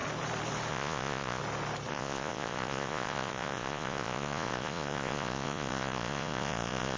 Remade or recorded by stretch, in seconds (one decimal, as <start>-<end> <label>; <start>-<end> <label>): 0.0-0.7 recorded; 0.7-1.4 remade; 1.4-1.9 recorded; 1.9-7.0 remade